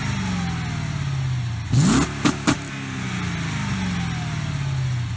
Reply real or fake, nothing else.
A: real